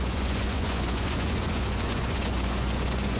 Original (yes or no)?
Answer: no